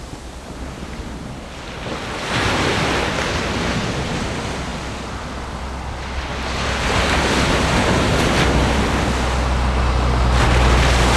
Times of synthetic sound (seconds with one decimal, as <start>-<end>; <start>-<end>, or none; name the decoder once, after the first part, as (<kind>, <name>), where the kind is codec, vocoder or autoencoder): none

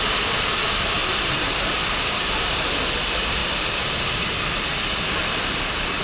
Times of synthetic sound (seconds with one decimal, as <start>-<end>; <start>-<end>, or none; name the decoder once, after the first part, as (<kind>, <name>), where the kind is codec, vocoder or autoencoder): 1.0-1.8 (vocoder, BigVGAN v2); 3.4-4.4

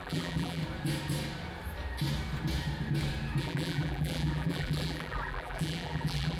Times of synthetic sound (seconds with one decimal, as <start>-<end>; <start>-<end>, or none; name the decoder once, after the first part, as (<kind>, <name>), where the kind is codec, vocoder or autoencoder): 0.0-0.6 (vocoder, BigVGAN v2); 3.4-6.4

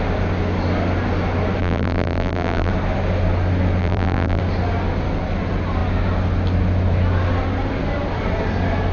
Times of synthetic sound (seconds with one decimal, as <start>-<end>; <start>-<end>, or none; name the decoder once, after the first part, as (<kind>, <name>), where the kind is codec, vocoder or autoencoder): 1.6-2.7 (vocoder, BigVGAN v2); 3.8-4.4

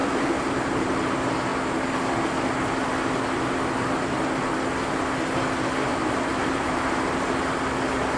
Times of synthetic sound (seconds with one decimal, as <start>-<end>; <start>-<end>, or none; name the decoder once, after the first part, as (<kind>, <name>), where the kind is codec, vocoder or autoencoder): 0.0-1.0 (vocoder, BigVGAN v2); 5.9-6.8

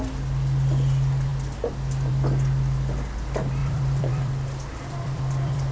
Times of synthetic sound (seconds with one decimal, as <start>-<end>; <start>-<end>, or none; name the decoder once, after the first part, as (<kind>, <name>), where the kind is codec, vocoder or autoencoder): 3.6-5.7 (vocoder, BigVGAN v2)

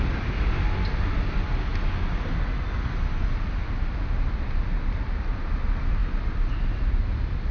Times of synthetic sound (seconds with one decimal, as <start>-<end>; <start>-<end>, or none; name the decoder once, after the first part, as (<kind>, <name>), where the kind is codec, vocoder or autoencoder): none